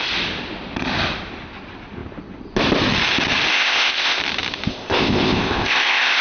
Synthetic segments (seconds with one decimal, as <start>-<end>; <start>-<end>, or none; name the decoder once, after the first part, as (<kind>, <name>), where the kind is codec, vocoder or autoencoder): 3.5-4.2 (codec, ZipCodec); 4.7-6.2